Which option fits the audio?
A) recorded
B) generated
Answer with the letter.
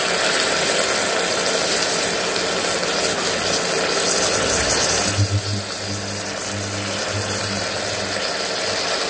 A